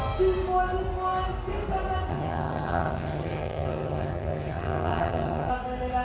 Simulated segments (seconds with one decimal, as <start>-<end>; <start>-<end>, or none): 2.1-5.5